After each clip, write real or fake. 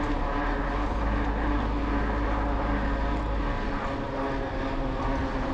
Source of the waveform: real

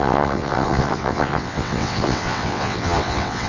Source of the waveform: fake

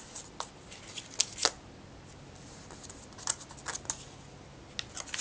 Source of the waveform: real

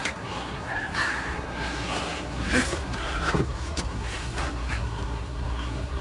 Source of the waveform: fake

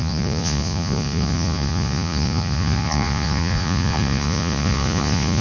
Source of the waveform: fake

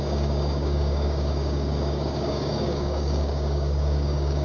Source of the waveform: fake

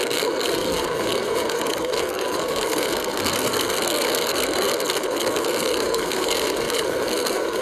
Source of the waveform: fake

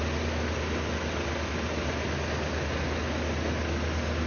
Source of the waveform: real